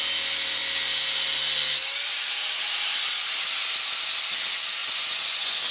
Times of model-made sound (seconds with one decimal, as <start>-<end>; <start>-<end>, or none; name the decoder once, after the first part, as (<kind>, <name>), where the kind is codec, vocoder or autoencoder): 4.8-5.7 (vocoder, Vocos)